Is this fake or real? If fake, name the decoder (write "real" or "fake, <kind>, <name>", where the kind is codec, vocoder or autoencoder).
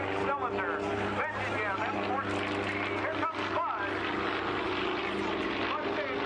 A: real